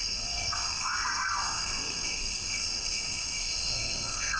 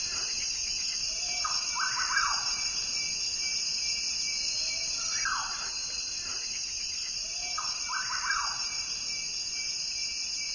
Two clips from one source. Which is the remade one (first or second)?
first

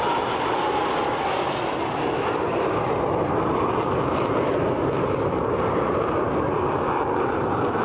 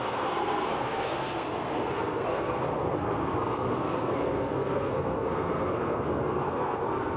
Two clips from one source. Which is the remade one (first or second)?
second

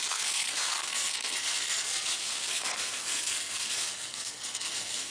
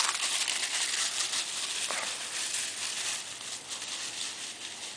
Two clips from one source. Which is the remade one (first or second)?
first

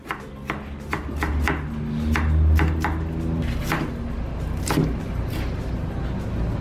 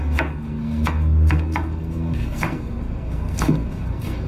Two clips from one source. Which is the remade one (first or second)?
second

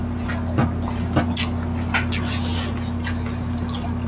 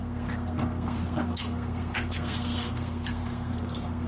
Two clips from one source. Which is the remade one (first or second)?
second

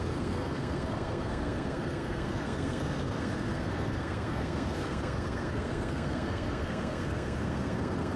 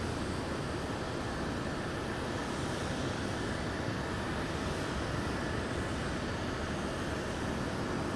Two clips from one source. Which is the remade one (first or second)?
first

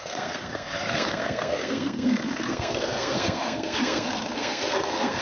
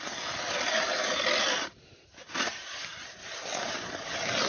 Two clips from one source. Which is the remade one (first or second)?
first